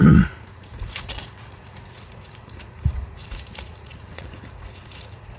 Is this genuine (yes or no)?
no